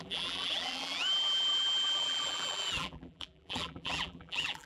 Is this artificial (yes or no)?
yes